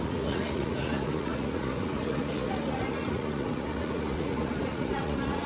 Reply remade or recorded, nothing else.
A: remade